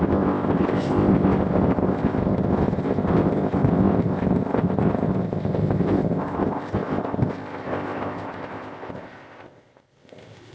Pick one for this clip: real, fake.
fake